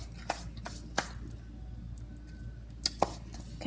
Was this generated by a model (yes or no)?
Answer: no